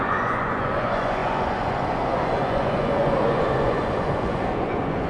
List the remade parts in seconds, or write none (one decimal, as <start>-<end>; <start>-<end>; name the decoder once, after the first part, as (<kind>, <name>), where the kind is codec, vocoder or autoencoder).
0.0-5.1 (vocoder, Vocos)